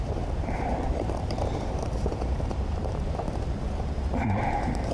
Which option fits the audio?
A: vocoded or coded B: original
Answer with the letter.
A